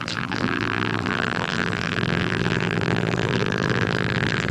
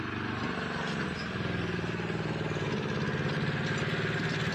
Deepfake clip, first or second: first